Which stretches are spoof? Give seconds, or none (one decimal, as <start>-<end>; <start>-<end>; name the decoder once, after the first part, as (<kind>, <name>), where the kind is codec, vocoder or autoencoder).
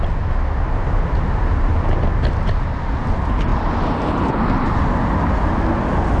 none